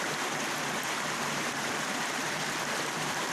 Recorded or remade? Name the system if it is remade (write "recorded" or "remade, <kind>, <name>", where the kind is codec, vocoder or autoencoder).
recorded